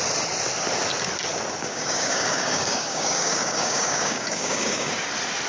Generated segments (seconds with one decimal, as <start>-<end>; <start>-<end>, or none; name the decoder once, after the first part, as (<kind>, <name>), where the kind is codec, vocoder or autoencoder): 1.6-4.9 (codec, DAC)